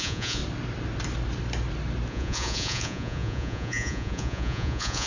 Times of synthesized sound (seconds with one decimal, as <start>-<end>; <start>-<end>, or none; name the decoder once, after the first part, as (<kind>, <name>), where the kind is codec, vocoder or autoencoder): 0.0-0.4 (vocoder, Vocos); 2.1-5.1

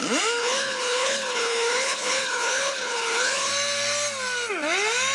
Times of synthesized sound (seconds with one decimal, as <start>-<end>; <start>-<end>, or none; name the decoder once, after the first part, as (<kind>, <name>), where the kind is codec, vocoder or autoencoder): 0.4-3.5 (codec, HILCodec)